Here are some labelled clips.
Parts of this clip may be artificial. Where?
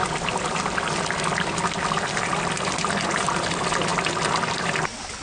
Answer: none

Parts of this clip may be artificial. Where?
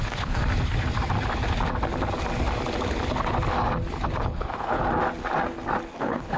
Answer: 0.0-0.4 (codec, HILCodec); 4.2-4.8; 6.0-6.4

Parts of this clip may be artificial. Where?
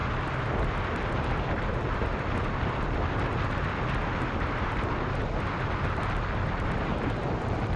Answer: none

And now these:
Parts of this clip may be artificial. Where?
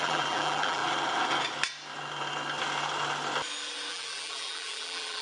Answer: 0.0-0.8 (vocoder, BigVGAN v2); 3.9-5.2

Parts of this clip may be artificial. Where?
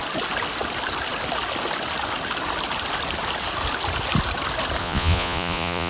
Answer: 4.8-5.9 (vocoder, Vocos)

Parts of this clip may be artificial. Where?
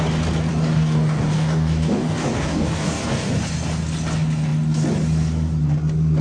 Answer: 0.5-3.3 (codec, DAC)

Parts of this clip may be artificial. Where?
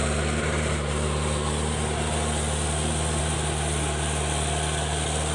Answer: none